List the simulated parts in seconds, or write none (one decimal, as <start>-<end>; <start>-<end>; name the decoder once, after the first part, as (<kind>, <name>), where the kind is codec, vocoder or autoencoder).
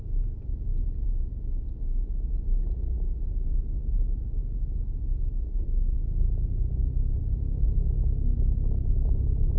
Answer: 7.2-8.0 (codec, SNAC)